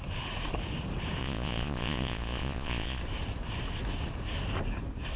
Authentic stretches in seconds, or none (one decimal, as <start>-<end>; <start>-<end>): 0.0-1.2; 3.0-5.2